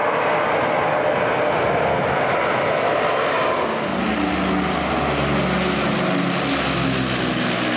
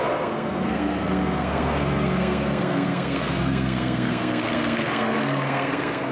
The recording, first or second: first